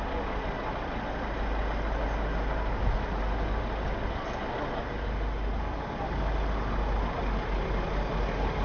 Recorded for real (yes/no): yes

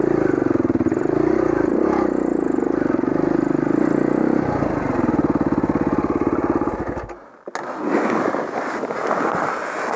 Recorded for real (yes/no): yes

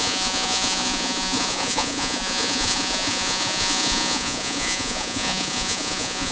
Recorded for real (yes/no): no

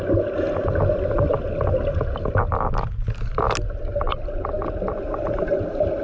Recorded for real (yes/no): yes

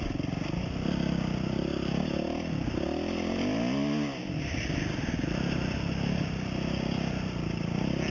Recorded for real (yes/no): yes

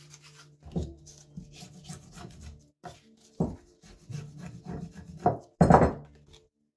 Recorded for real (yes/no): yes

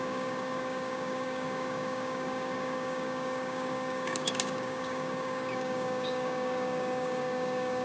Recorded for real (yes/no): no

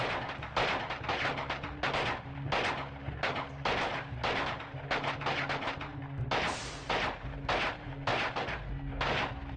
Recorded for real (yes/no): yes